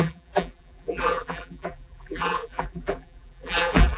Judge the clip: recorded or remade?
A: remade